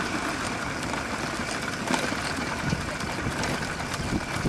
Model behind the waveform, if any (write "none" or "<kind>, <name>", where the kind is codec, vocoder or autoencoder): none